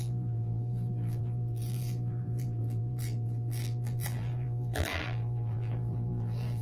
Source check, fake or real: fake